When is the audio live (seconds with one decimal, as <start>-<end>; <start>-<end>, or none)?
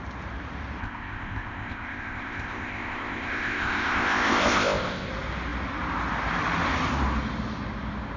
0.0-0.8; 5.1-8.2